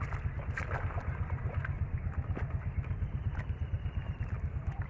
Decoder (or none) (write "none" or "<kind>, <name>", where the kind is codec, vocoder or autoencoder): none